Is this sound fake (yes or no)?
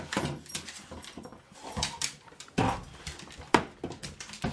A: no